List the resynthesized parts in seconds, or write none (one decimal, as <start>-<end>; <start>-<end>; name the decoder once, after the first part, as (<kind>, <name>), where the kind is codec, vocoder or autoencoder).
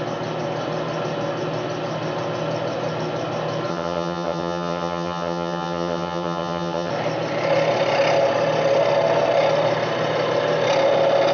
3.7-6.9 (vocoder, HiFi-GAN)